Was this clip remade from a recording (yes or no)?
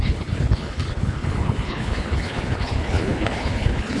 yes